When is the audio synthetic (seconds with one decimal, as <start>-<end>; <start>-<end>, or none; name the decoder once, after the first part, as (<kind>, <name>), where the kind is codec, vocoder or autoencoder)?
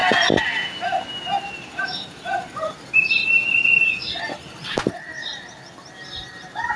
none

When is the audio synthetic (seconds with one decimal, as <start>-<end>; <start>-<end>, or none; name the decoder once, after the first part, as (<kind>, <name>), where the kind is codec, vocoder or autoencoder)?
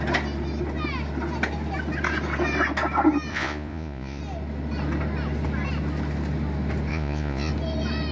3.3-4.2 (vocoder, Vocos); 6.9-7.5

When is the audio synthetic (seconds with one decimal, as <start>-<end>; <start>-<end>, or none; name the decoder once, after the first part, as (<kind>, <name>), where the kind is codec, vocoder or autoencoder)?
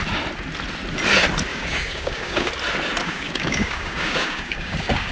1.5-2.5 (codec, DAC); 3.0-5.1